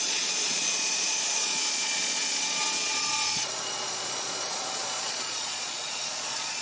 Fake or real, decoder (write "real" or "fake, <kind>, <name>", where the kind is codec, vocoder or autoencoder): fake, vocoder, Vocos